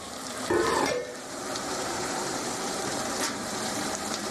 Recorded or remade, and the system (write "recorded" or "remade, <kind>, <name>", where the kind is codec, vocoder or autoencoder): remade, vocoder, BigVGAN v2